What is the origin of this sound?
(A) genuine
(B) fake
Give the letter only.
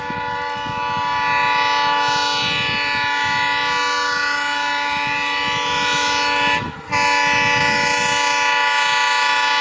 A